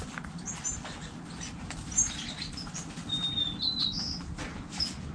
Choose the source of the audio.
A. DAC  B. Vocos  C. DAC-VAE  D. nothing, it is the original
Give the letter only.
D